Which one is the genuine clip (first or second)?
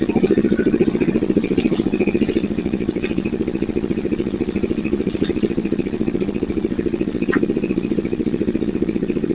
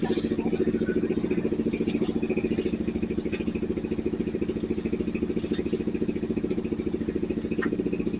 second